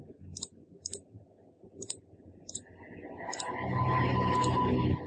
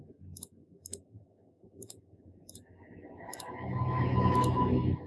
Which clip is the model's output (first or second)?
second